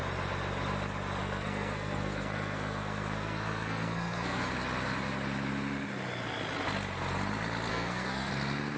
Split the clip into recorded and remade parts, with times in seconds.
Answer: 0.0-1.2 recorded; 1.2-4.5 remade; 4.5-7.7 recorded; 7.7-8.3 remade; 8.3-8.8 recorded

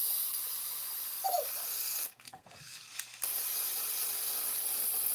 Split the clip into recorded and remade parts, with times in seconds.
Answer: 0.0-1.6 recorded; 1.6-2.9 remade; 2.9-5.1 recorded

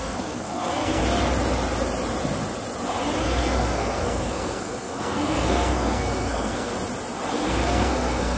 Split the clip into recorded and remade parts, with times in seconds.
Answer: 0.0-1.0 remade; 1.0-3.2 recorded; 3.2-6.7 remade; 6.7-7.3 recorded; 7.3-8.4 remade

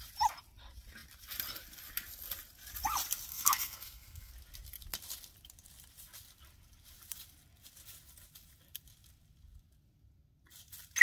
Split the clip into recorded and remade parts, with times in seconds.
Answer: 0.0-3.3 recorded; 3.3-4.3 remade; 4.3-11.0 recorded